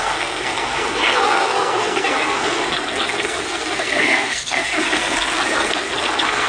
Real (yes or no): no